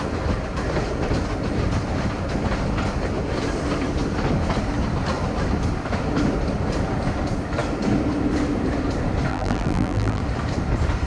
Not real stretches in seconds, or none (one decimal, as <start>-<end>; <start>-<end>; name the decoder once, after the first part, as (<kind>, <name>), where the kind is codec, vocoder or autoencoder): 9.3-10.2 (vocoder, BigVGAN v2)